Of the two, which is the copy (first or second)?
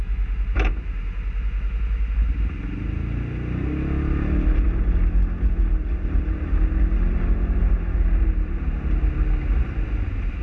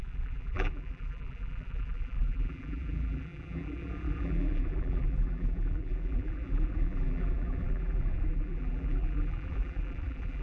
second